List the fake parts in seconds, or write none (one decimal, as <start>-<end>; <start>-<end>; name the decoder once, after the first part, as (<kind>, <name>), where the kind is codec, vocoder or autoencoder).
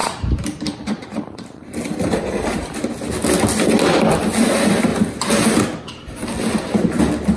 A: 0.0-2.8 (vocoder, BigVGAN v2)